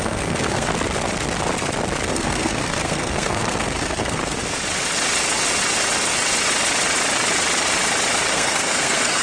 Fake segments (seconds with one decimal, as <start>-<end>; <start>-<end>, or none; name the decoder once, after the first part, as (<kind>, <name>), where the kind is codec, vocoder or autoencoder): 0.0-0.7 (codec, SNAC); 2.1-4.2; 8.3-9.2